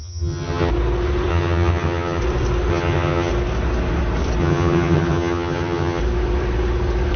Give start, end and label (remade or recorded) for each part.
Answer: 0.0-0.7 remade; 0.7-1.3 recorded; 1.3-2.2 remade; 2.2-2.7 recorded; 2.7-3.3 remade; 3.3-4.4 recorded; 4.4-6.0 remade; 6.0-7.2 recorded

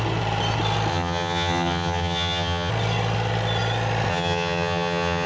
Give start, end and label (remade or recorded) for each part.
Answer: 0.0-0.9 recorded; 0.9-2.7 remade; 2.7-4.1 recorded; 4.1-5.3 remade

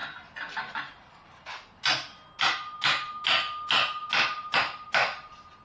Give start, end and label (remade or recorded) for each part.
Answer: 0.0-5.6 recorded

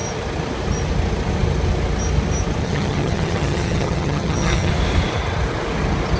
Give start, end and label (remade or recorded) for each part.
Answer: 0.0-2.6 recorded; 2.6-4.7 remade; 4.7-6.2 recorded

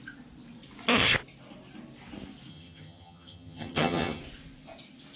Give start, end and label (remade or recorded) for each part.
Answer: 0.0-2.5 recorded; 2.5-4.2 remade; 4.2-5.2 recorded